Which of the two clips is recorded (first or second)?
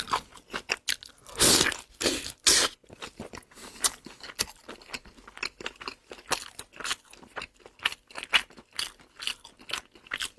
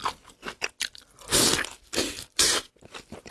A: first